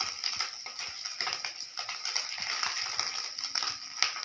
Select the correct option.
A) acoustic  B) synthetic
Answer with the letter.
A